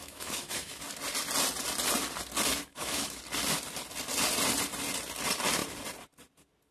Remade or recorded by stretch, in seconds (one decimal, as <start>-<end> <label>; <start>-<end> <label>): 0.0-0.8 remade; 0.8-2.7 recorded; 2.7-3.2 remade; 3.2-6.7 recorded